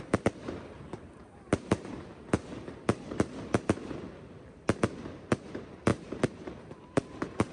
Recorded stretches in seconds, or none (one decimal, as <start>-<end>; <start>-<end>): 0.0-1.2; 2.1-5.9